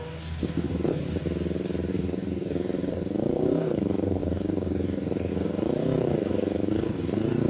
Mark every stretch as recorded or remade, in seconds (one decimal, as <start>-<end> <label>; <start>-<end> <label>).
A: 0.0-1.0 remade; 1.0-1.9 recorded; 1.9-7.5 remade